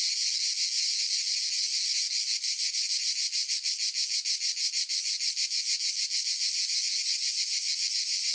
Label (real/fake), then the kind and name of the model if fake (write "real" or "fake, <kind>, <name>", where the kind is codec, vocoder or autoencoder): real